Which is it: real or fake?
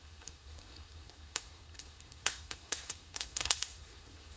fake